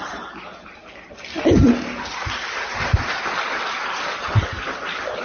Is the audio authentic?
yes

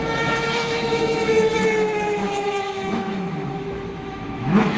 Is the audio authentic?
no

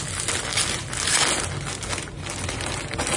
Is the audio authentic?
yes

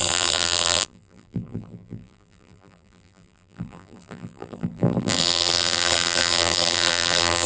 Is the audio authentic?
no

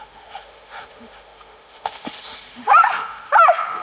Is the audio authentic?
no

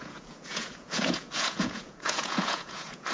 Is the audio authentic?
no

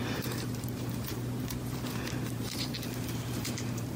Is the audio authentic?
no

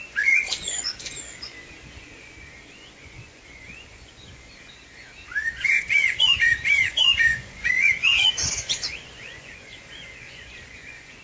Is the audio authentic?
no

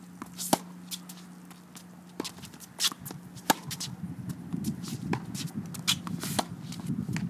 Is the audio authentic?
yes